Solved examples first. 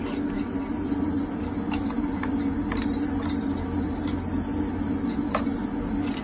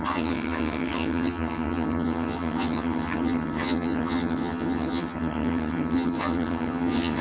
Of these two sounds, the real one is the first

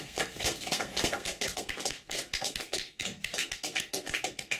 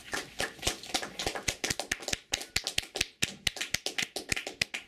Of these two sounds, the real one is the second